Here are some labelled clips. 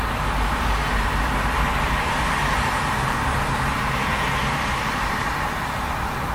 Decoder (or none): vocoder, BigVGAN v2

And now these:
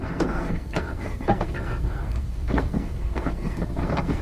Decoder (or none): codec, SNAC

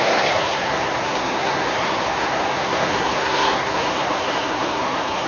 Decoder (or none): codec, SNAC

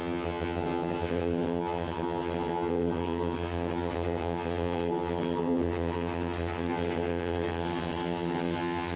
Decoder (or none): vocoder, HiFi-GAN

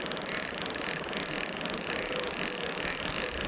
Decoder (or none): none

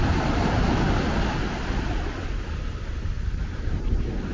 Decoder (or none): none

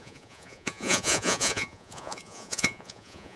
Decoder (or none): vocoder, Vocos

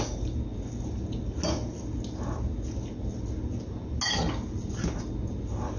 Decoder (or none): none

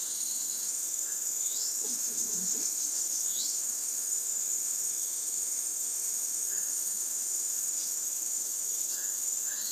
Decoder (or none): autoencoder, DAC-VAE